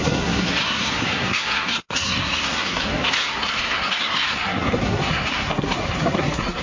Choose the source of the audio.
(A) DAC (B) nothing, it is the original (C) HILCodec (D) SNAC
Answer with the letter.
D